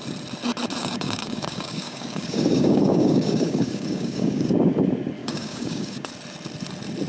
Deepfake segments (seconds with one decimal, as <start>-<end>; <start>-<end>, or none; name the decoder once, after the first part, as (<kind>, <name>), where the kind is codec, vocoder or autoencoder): 0.8-4.5 (codec, DAC); 5.2-6.1